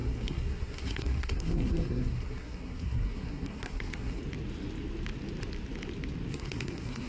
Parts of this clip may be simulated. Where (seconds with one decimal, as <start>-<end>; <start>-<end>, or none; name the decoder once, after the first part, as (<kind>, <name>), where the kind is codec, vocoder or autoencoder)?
0.0-4.2 (codec, SNAC); 6.3-7.1